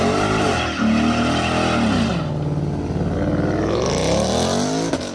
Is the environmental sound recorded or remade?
recorded